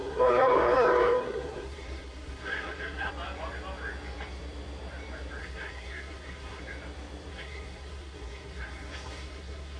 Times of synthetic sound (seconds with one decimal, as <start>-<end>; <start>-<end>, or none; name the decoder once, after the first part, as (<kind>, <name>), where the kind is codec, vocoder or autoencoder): 0.0-3.1 (codec, SNAC); 5.4-6.6; 7.3-9.8